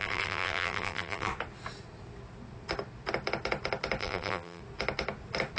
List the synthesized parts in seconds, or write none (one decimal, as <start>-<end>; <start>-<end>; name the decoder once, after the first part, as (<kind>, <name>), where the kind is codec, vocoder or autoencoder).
0.0-1.3 (vocoder, BigVGAN v2); 4.0-4.6